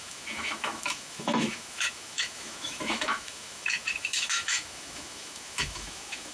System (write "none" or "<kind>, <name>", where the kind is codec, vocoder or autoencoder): autoencoder, DAC-VAE